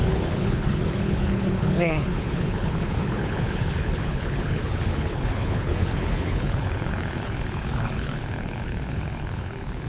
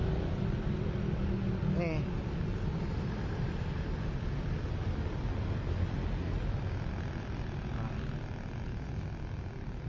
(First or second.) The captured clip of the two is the second